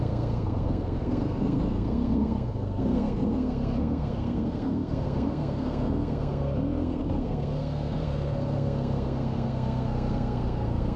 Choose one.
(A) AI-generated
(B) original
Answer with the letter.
A